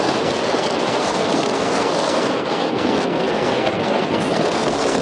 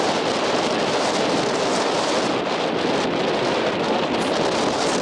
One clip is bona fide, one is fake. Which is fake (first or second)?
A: first